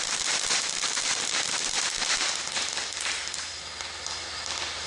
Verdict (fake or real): real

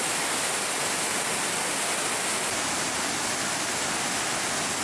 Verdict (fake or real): real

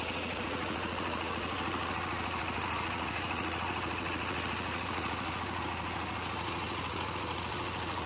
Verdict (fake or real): fake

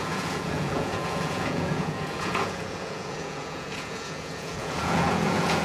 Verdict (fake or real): fake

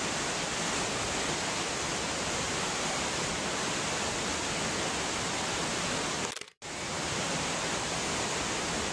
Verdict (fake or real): real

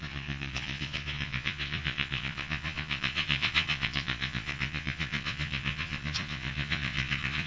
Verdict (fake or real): fake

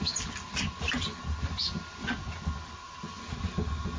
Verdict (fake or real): real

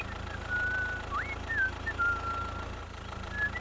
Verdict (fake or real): real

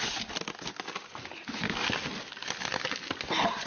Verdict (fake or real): real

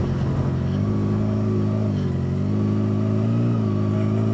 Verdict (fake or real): real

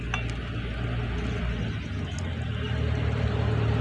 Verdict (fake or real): real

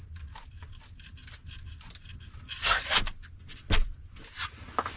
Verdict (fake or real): real